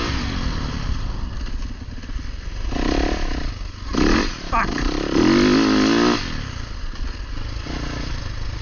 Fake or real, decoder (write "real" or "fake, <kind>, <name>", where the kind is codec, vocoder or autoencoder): real